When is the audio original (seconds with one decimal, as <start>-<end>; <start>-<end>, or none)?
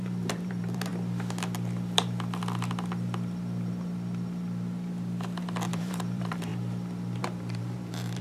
0.9-5.7; 6.5-7.2